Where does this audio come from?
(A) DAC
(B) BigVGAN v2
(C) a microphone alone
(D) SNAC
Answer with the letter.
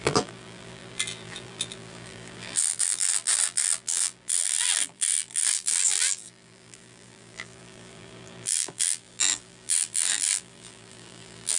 B